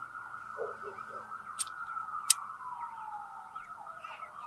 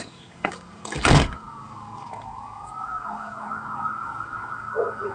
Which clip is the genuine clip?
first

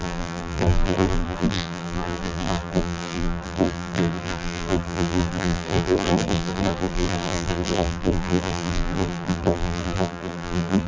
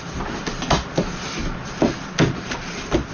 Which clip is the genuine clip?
second